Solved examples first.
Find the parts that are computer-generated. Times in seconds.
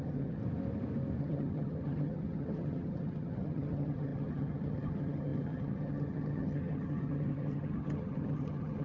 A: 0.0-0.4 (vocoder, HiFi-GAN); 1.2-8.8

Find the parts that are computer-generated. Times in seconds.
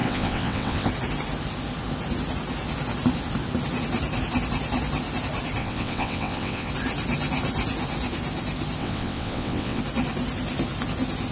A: 0.0-0.9 (vocoder, WaveNeXt); 5.6-6.7; 8.8-9.8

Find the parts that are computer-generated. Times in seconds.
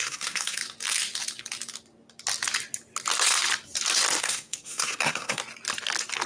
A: 0.0-0.6 (codec, SNAC); 4.2-5.4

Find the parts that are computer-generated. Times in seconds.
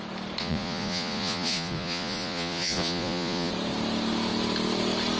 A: 0.4-3.5 (vocoder, Vocos)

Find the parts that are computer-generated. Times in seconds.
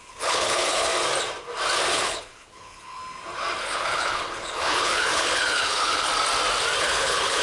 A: 0.0-0.9 (codec, HILCodec); 1.9-3.0; 3.6-6.1; 6.8-7.4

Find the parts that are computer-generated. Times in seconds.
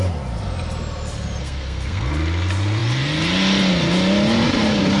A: 1.4-2.1 (codec, SNAC)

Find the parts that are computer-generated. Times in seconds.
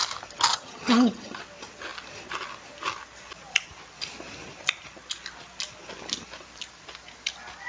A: 0.5-1.4 (vocoder, HiFi-GAN)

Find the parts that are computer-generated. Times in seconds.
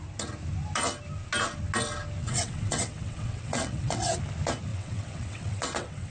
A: 2.2-4.2 (vocoder, WaveNeXt); 4.7-6.1